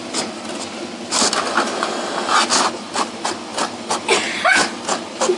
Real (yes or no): yes